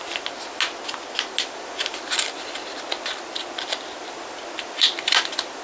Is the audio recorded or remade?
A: recorded